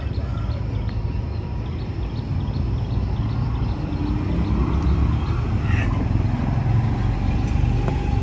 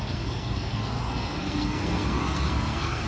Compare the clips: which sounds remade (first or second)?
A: second